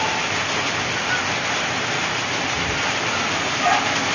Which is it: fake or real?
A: real